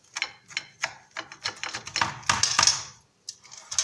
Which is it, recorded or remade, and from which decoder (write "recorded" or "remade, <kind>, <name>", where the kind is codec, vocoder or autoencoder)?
recorded